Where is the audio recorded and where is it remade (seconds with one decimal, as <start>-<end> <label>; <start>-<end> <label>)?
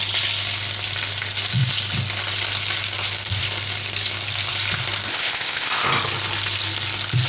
0.0-5.1 recorded; 5.1-5.9 remade; 5.9-7.3 recorded